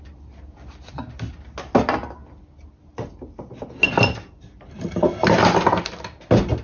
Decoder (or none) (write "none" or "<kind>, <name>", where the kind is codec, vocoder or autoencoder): none